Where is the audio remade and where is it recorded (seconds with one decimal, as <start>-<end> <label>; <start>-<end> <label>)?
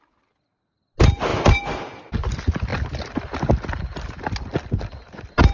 0.0-5.5 recorded